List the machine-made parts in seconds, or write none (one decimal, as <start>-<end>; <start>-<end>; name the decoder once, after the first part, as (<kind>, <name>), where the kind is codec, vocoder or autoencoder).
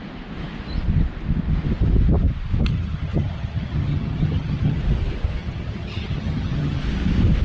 2.7-4.8 (vocoder, HiFi-GAN); 5.4-6.8